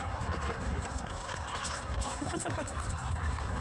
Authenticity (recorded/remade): remade